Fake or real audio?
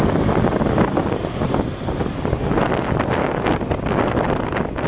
real